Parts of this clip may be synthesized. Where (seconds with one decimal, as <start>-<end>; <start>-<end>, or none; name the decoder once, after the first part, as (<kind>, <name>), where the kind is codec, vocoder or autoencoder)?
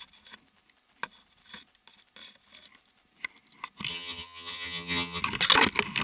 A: 3.9-5.2 (vocoder, HiFi-GAN)